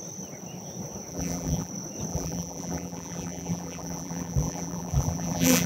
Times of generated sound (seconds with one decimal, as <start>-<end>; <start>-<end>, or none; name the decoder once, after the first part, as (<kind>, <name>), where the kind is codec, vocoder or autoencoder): 1.1-1.7 (vocoder, BigVGAN v2); 2.1-5.7